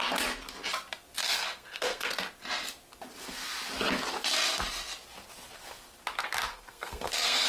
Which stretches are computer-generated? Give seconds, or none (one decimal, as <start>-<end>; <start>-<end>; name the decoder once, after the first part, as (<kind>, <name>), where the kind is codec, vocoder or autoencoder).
1.2-2.1 (codec, SNAC); 6.5-7.5